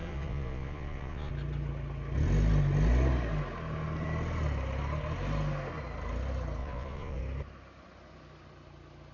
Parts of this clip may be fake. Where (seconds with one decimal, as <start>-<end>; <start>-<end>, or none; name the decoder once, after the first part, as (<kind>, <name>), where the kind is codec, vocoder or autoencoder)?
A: 0.0-1.3 (vocoder, Vocos); 6.6-7.2